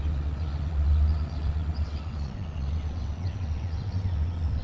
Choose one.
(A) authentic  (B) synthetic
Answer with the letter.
B